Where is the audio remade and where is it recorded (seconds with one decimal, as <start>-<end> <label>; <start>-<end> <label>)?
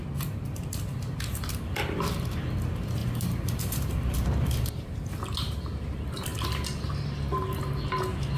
0.0-3.0 recorded; 3.0-5.2 remade; 5.2-8.4 recorded